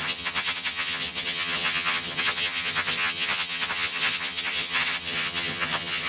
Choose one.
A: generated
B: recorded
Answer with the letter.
A